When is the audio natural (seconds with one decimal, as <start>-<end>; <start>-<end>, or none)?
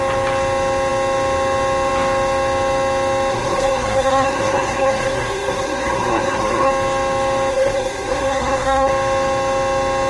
0.0-3.3; 6.7-7.5; 8.9-10.1